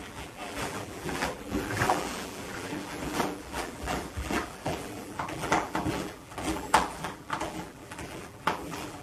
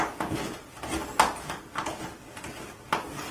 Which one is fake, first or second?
first